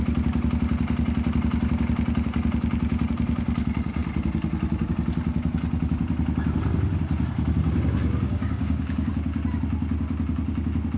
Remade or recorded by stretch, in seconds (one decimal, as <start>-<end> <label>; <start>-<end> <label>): 0.0-8.3 recorded; 8.3-9.1 remade; 9.1-11.0 recorded